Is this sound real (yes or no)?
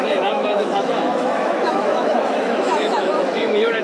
no